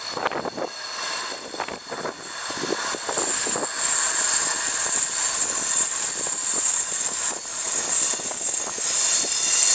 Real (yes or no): yes